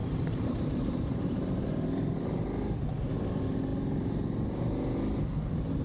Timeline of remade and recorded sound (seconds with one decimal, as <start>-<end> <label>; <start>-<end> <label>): 0.0-1.5 remade; 1.5-5.8 recorded